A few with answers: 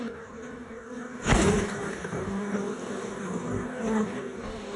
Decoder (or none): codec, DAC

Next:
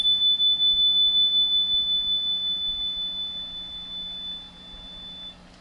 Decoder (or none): none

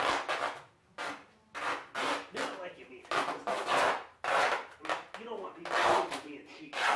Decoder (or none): none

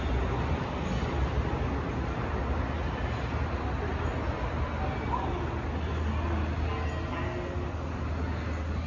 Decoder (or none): none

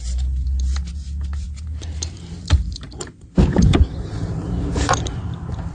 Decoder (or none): vocoder, BigVGAN v2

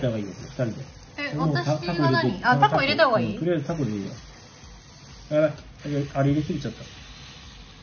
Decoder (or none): none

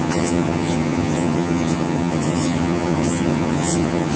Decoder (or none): vocoder, HiFi-GAN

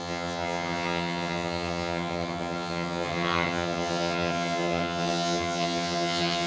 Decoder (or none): vocoder, HiFi-GAN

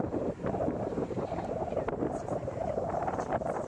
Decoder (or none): vocoder, BigVGAN v2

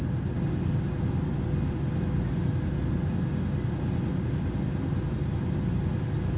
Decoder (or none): none